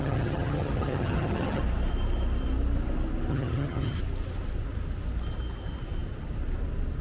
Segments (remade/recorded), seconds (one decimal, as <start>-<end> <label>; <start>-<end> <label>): 0.0-1.6 remade; 1.6-3.3 recorded; 3.3-4.0 remade; 4.0-7.0 recorded